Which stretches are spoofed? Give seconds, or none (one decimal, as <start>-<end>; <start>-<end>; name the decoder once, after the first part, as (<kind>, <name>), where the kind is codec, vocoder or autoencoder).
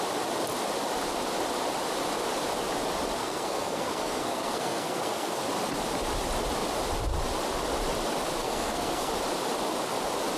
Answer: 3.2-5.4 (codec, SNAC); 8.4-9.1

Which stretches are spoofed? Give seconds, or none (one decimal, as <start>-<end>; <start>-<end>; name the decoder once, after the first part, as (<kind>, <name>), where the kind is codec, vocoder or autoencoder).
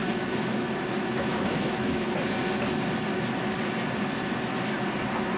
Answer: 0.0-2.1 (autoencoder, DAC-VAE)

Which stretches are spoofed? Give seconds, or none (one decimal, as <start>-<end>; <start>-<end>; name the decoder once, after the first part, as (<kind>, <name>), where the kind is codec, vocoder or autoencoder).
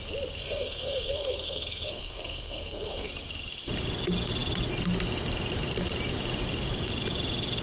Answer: 0.4-3.1 (codec, SNAC)